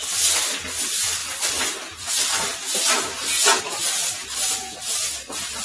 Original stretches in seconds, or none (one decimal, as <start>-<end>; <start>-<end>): 0.0-5.6